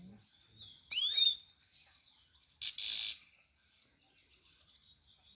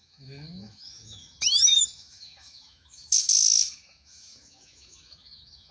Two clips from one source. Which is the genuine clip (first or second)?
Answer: first